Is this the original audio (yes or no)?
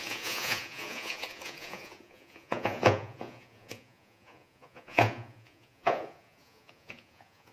no